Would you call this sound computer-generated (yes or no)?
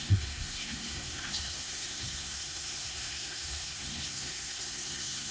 yes